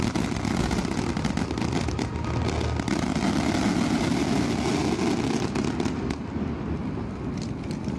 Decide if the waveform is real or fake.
real